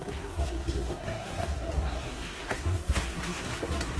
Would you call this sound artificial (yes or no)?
yes